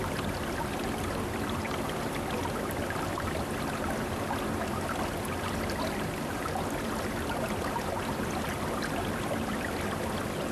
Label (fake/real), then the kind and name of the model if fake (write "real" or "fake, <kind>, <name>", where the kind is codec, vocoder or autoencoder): real